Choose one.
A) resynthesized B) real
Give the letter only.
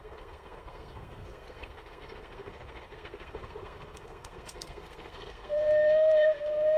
A